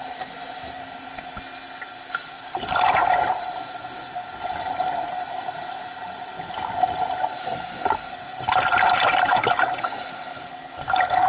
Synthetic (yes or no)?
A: no